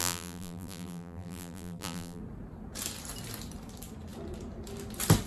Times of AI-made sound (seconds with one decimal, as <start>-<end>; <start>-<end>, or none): 0.0-2.2